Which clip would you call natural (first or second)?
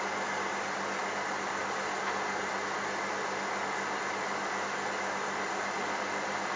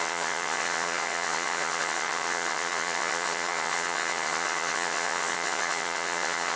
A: first